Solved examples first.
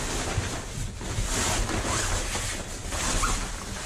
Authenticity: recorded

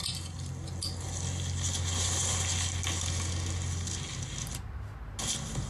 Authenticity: recorded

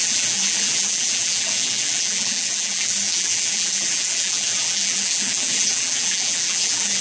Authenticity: remade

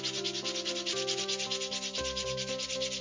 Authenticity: recorded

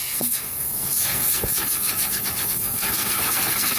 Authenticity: remade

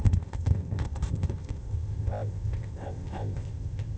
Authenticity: remade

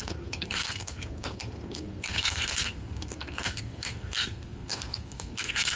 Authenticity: remade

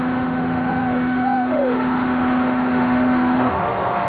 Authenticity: remade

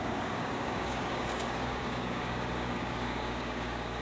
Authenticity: remade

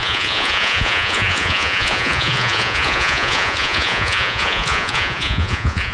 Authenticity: remade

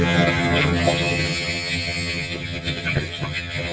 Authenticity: remade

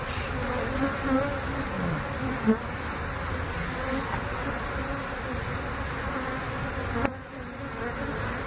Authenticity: recorded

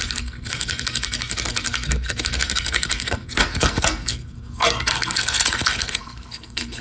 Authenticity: remade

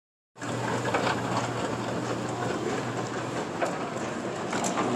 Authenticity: recorded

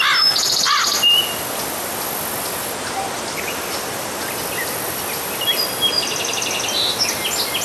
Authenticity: recorded